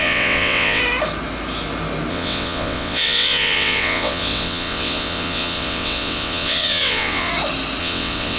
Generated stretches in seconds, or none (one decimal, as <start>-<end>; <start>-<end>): 0.0-0.8; 2.1-7.3; 7.8-8.4